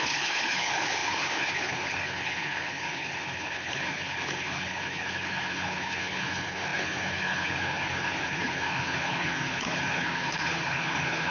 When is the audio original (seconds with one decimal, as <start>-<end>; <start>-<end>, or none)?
none